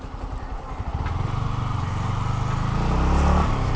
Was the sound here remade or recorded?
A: recorded